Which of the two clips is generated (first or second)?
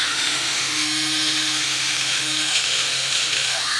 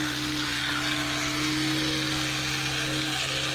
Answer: first